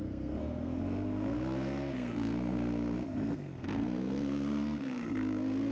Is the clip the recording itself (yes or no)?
no